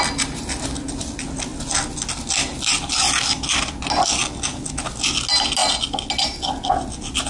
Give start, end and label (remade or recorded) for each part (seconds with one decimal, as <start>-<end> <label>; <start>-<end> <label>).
0.0-7.3 recorded